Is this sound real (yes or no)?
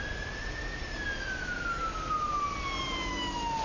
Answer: yes